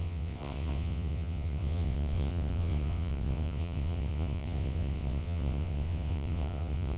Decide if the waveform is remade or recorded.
remade